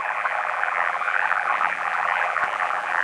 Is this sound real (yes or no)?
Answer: no